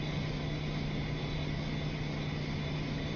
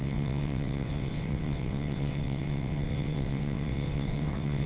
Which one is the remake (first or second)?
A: second